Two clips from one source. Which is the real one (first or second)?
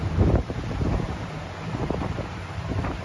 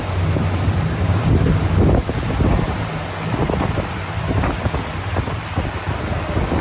second